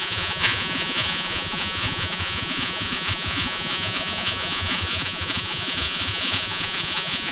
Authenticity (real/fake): fake